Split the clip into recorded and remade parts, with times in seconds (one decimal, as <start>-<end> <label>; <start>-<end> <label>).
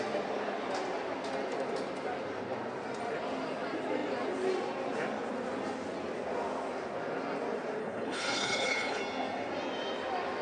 0.0-7.8 recorded; 7.8-9.0 remade; 9.0-10.4 recorded